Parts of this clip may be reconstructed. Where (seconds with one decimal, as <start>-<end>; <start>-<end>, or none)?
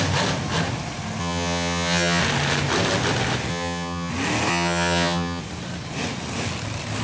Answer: 1.2-2.2; 3.5-4.1; 4.5-5.4